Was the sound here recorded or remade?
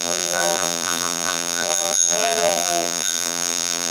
remade